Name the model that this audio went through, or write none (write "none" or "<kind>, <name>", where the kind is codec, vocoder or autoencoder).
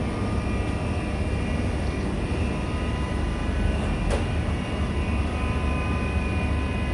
none